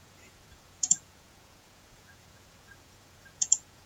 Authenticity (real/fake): fake